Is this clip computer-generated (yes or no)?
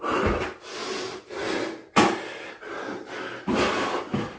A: no